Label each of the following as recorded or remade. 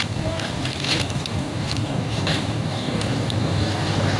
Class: remade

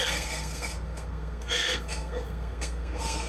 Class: remade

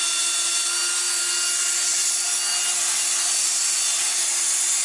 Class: recorded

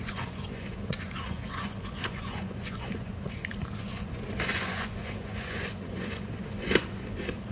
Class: remade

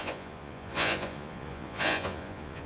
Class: remade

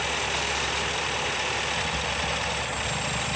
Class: recorded